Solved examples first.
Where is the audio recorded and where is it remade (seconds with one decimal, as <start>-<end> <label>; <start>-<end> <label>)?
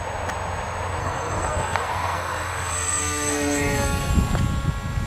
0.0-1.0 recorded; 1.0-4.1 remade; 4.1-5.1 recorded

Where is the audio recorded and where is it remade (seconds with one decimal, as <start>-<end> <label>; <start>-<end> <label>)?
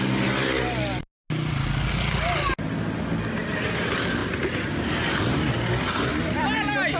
0.0-7.0 recorded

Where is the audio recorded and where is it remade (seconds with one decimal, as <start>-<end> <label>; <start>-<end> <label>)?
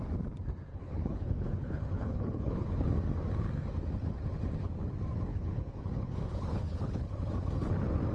0.0-0.7 recorded; 0.7-2.9 remade; 2.9-5.3 recorded; 5.3-7.3 remade; 7.3-8.1 recorded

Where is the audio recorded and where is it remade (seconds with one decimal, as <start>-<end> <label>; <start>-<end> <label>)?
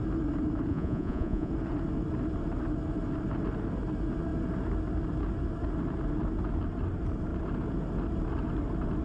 0.0-0.7 recorded; 0.7-1.5 remade; 1.5-9.0 recorded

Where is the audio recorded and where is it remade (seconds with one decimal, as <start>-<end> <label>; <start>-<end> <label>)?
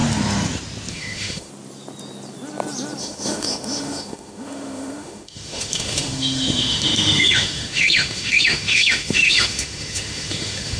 0.0-0.9 recorded; 0.9-1.5 remade; 1.5-3.0 recorded; 3.0-10.8 remade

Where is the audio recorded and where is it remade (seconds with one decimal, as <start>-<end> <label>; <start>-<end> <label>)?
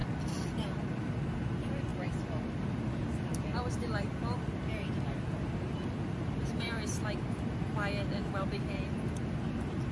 0.0-1.1 remade; 1.1-1.9 recorded; 1.9-6.8 remade; 6.8-8.2 recorded; 8.2-8.7 remade; 8.7-9.9 recorded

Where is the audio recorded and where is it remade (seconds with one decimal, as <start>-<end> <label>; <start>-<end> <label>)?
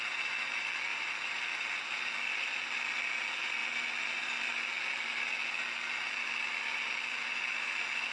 0.0-0.9 recorded; 0.9-1.5 remade; 1.5-8.1 recorded